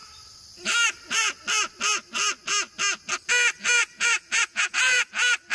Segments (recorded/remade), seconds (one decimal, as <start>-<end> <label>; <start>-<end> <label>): 0.0-3.8 recorded; 3.8-5.1 remade; 5.1-5.5 recorded